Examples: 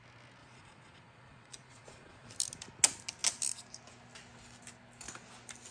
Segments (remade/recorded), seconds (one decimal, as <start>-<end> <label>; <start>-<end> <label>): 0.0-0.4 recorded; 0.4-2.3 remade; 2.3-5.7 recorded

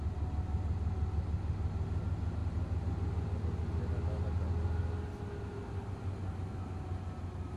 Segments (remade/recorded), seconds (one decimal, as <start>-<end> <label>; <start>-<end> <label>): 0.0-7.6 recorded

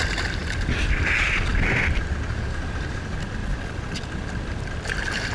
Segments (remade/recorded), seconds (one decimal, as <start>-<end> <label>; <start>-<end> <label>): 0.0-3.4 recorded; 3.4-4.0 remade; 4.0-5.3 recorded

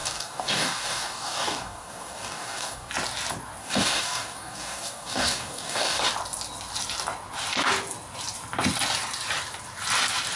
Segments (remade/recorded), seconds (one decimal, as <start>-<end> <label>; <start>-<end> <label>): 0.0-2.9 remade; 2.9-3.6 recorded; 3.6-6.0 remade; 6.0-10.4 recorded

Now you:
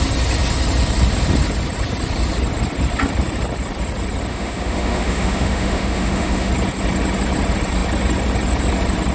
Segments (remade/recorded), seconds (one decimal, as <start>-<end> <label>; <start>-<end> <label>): 0.0-4.3 recorded; 4.3-6.5 remade; 6.5-9.1 recorded

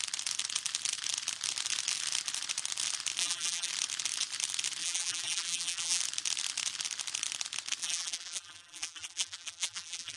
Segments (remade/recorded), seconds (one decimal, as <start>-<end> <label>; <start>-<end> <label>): 0.0-3.2 recorded; 3.2-3.7 remade; 3.7-4.8 recorded; 4.8-6.0 remade; 6.0-7.8 recorded; 7.8-10.2 remade

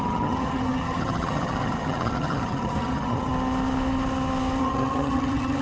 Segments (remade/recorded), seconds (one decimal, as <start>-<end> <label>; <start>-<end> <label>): 0.0-3.3 remade; 3.3-4.6 recorded; 4.6-5.6 remade